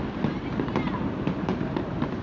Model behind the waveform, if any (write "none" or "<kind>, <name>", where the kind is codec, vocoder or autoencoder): none